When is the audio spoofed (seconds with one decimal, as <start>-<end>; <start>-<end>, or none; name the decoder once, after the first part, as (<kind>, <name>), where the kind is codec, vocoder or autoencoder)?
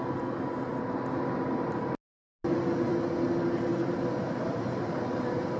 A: none